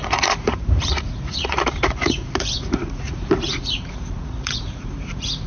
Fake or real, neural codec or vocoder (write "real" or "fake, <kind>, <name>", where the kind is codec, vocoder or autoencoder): fake, vocoder, Vocos